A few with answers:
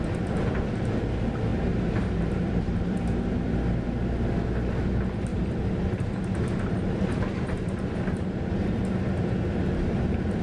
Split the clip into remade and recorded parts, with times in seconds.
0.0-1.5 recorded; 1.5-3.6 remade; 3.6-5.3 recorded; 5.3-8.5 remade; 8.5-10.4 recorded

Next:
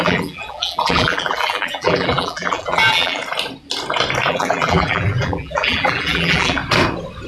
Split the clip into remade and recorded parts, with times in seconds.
0.0-3.2 remade; 3.2-4.3 recorded; 4.3-6.6 remade; 6.6-7.3 recorded

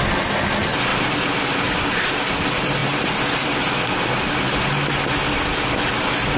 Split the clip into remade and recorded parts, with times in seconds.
0.0-6.4 recorded